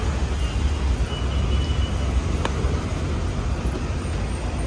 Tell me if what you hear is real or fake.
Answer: real